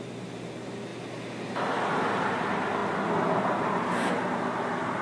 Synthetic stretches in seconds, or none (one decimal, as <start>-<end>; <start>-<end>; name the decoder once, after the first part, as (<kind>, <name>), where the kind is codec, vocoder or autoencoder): none